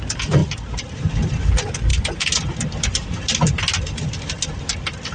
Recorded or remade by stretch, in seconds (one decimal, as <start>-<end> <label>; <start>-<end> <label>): 0.0-5.1 recorded

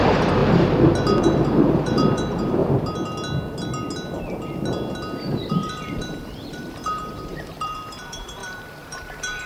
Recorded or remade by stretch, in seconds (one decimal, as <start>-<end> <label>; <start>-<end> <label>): 0.0-0.4 remade; 0.4-1.2 recorded; 1.2-2.6 remade; 2.6-5.5 recorded; 5.5-9.5 remade

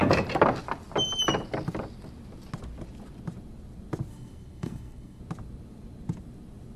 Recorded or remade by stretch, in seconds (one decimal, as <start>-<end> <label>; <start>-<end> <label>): 0.0-4.1 recorded; 4.1-5.2 remade; 5.2-6.8 recorded

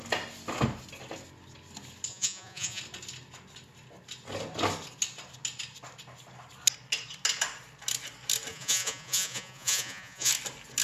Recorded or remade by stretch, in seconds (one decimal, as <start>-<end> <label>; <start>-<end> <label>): 0.0-2.1 recorded; 2.1-2.8 remade; 2.8-8.5 recorded; 8.5-10.3 remade; 10.3-10.8 recorded

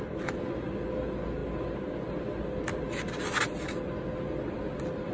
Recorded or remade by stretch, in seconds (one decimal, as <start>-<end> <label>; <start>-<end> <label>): 0.0-5.1 recorded

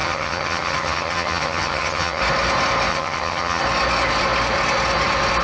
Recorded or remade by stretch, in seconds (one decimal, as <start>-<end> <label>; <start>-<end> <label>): 0.0-2.2 remade; 2.2-2.9 recorded; 2.9-3.6 remade; 3.6-5.4 recorded

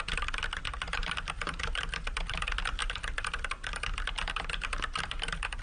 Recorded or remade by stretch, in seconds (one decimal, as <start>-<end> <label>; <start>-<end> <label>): 0.0-5.6 recorded